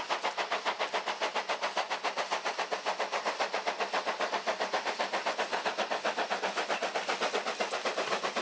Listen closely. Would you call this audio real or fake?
real